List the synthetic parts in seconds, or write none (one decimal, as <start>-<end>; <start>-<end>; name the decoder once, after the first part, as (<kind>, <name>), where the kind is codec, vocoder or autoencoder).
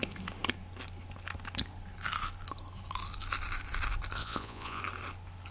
4.2-4.8 (vocoder, Vocos)